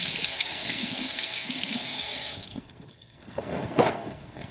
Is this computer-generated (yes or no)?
yes